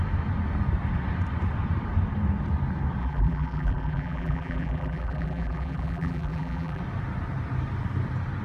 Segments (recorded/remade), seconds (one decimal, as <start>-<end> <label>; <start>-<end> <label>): 0.0-3.0 recorded; 3.0-6.8 remade; 6.8-8.4 recorded